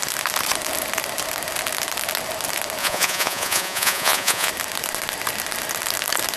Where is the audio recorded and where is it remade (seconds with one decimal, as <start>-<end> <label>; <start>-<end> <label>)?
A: 0.0-2.8 recorded; 2.8-4.5 remade; 4.5-6.4 recorded